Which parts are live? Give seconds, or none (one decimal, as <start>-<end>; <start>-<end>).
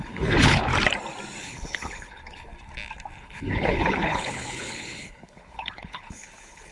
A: 0.7-1.4; 2.5-3.2